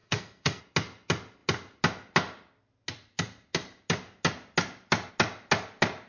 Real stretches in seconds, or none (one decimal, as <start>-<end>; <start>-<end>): 0.6-6.1